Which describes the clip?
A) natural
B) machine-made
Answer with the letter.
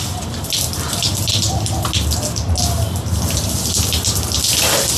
A